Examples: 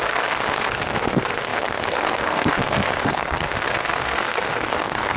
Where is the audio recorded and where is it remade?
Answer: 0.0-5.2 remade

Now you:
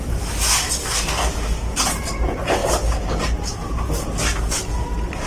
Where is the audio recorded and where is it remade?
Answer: 0.0-0.8 recorded; 0.8-1.3 remade; 1.3-5.3 recorded